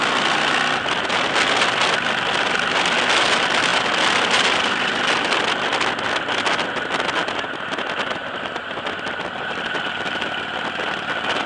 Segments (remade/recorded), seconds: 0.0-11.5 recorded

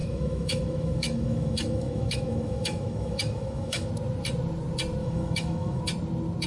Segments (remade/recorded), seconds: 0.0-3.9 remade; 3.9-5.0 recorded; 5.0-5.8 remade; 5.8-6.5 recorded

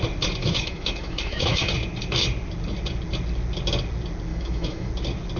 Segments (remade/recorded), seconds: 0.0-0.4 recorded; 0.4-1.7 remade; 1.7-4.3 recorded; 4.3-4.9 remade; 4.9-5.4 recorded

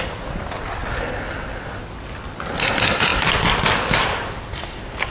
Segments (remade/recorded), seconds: 0.0-5.1 recorded

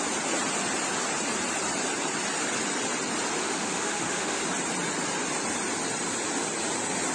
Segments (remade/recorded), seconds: 0.0-3.4 recorded; 3.4-4.4 remade; 4.4-7.1 recorded

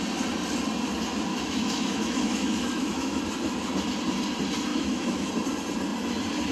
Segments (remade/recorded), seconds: 0.0-1.3 recorded; 1.3-3.2 remade; 3.2-4.7 recorded; 4.7-5.3 remade; 5.3-6.5 recorded

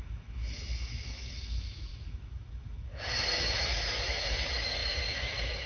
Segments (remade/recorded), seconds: 0.0-5.7 remade